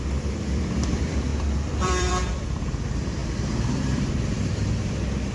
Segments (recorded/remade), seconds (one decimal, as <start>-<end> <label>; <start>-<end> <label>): 0.0-5.3 remade